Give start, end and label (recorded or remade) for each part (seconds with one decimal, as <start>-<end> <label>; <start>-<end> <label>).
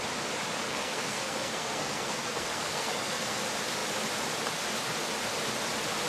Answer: 0.0-0.7 recorded; 0.7-3.4 remade; 3.4-6.1 recorded